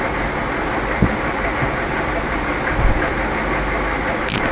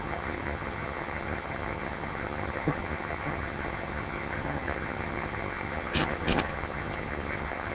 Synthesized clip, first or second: second